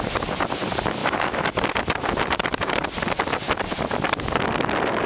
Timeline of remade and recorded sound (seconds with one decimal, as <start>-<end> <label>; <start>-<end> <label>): 0.0-1.0 recorded; 1.0-1.6 remade; 1.6-5.1 recorded